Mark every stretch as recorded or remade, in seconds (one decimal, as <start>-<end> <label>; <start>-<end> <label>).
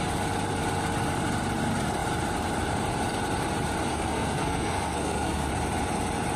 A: 0.0-3.9 recorded; 3.9-5.5 remade; 5.5-6.4 recorded